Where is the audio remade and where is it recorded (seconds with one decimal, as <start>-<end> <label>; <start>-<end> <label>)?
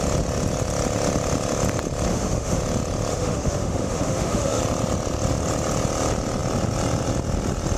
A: 0.0-2.1 recorded; 2.1-2.6 remade; 2.6-3.1 recorded; 3.1-4.6 remade; 4.6-7.8 recorded